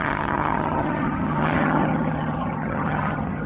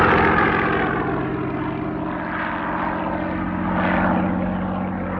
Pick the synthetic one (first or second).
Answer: first